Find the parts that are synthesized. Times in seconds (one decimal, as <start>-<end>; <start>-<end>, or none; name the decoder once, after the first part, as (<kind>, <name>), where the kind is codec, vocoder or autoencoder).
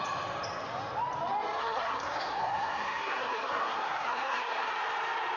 1.6-4.7 (codec, SNAC)